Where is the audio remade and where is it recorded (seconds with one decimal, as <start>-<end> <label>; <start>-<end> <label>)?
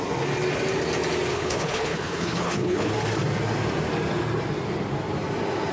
0.0-1.3 recorded; 1.3-2.9 remade; 2.9-5.7 recorded